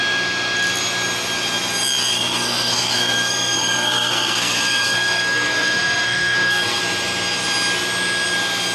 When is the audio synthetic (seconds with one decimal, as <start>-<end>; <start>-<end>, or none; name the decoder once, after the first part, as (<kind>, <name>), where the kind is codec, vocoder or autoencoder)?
2.1-6.8 (codec, SNAC)